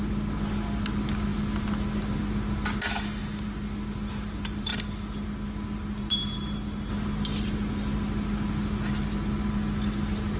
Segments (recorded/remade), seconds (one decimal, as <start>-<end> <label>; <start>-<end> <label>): 0.0-10.4 recorded